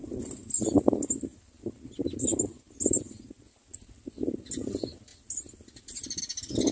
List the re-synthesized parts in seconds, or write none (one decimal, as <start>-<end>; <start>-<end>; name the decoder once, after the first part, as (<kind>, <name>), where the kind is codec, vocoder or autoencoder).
none